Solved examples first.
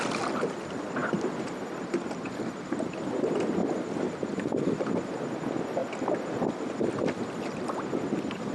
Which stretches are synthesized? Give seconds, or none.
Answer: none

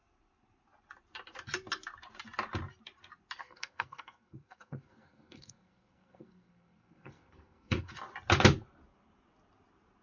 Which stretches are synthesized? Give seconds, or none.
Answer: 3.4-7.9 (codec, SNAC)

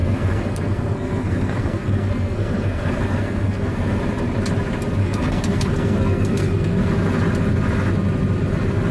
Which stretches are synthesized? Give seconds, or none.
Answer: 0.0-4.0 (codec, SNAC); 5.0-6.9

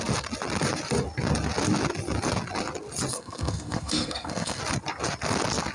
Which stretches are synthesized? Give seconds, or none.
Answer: 3.1-4.6 (codec, SNAC)